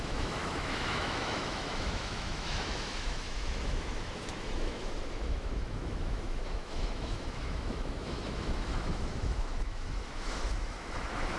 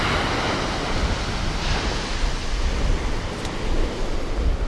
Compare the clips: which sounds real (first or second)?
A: second